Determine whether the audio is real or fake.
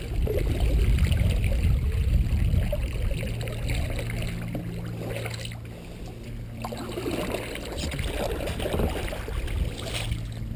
real